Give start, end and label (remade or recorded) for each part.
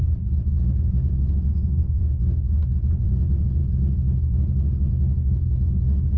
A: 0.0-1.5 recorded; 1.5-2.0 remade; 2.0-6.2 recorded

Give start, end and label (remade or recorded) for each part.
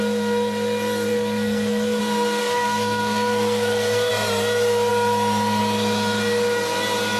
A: 0.0-1.1 recorded; 1.1-2.0 remade; 2.0-2.4 recorded; 2.4-4.1 remade; 4.1-7.2 recorded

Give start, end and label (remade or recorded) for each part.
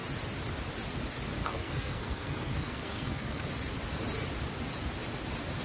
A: 0.0-1.4 recorded; 1.4-3.5 remade; 3.5-5.6 recorded